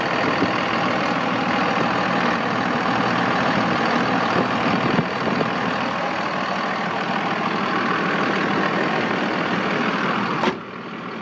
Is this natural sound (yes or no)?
yes